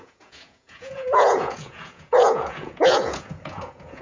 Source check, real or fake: fake